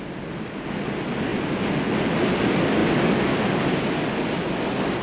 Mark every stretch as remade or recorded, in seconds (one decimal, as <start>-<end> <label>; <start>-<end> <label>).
0.0-5.0 recorded